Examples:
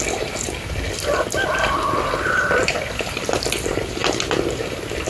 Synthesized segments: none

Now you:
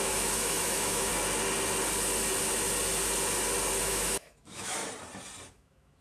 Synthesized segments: 0.0-1.1 (autoencoder, DAC-VAE); 3.8-4.8; 5.5-6.0

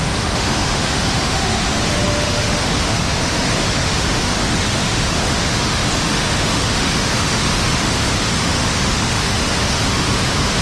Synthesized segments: 0.0-10.6 (autoencoder, DAC-VAE)

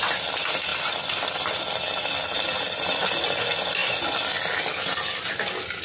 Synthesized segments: none

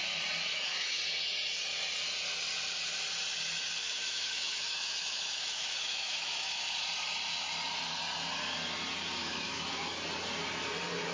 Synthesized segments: 0.5-1.0 (autoencoder, DAC-VAE); 3.8-6.8; 9.2-10.0